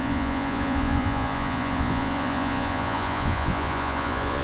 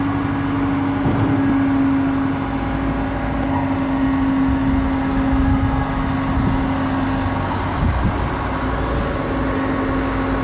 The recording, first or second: second